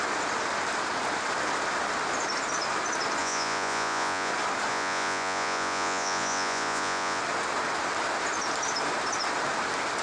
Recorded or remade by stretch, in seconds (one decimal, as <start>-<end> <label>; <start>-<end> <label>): 0.0-3.2 recorded; 3.2-4.3 remade; 4.3-4.7 recorded; 4.7-7.2 remade; 7.2-10.0 recorded